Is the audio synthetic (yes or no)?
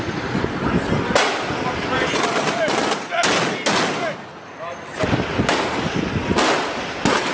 no